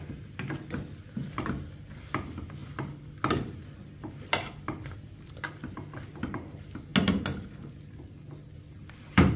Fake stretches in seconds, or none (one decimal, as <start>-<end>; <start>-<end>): none